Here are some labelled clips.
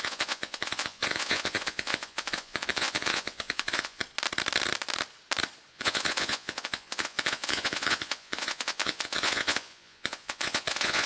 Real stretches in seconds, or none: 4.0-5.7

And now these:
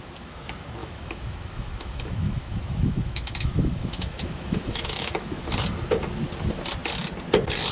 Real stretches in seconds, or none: 0.0-0.8; 5.4-7.7